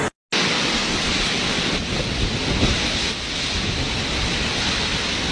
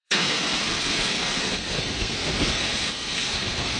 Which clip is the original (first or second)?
first